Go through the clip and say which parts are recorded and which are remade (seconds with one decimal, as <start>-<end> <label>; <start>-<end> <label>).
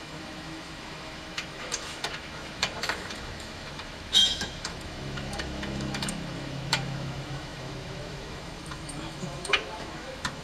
0.0-10.4 remade